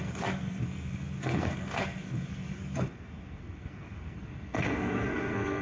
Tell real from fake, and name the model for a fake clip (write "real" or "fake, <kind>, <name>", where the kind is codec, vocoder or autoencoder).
fake, codec, SNAC